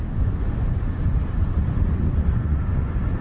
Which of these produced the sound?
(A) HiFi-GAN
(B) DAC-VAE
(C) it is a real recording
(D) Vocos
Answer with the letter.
D